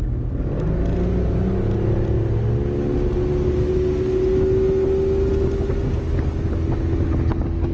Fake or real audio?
real